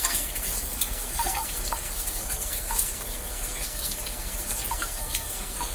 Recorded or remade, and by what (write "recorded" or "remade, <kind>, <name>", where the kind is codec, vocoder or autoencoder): remade, codec, SNAC